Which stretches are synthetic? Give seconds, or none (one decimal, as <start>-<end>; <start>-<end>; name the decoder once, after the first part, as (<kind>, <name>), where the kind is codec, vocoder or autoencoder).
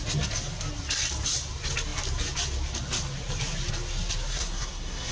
4.3-5.1 (codec, SNAC)